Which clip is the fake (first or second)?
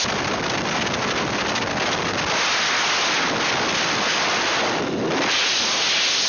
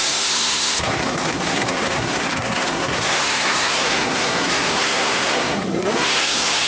second